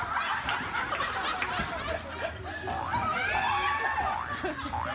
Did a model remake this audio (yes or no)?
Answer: no